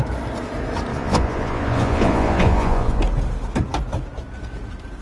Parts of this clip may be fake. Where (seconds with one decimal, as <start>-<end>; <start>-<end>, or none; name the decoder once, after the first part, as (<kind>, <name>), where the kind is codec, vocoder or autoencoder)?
0.9-3.0 (vocoder, Vocos)